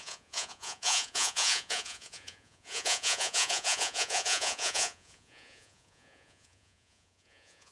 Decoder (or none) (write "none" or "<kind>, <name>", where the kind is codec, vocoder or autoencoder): vocoder, Vocos